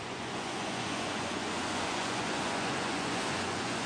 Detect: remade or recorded remade